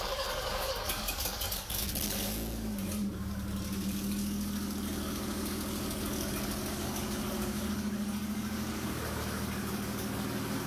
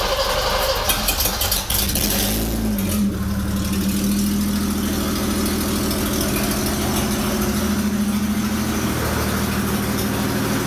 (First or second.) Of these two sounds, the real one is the second